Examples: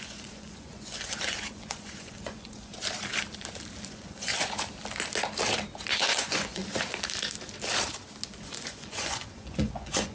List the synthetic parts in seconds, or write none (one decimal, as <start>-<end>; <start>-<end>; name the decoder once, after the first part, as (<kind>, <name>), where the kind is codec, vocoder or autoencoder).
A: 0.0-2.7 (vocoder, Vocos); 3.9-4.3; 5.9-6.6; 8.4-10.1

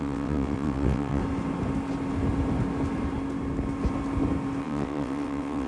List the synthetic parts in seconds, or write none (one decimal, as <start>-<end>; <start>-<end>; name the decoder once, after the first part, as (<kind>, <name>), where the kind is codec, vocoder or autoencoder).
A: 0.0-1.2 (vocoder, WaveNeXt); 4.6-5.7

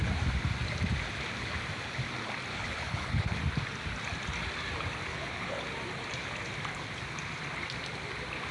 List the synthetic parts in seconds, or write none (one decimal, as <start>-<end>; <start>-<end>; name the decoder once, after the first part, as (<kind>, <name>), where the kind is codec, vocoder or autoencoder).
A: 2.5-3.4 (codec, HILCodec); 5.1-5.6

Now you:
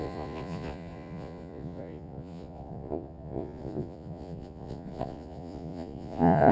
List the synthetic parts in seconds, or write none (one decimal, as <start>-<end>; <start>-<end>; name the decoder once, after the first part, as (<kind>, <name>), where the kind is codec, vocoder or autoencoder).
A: 0.0-6.5 (vocoder, Vocos)

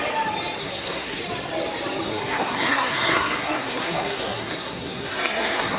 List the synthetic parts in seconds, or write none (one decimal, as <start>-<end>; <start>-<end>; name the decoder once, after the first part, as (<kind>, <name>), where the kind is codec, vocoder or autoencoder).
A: 0.6-1.2 (codec, SNAC); 2.1-5.8

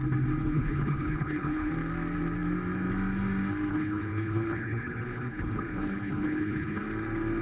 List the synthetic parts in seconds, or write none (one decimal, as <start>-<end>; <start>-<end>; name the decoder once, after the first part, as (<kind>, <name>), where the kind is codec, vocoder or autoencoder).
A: 0.4-1.7 (codec, HILCodec); 3.7-6.8